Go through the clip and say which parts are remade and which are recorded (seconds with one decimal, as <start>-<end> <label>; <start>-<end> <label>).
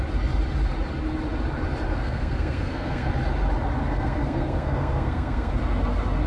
0.0-1.9 recorded; 1.9-3.1 remade; 3.1-3.8 recorded; 3.8-5.5 remade; 5.5-6.3 recorded